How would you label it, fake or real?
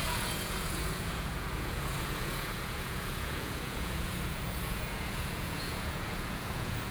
fake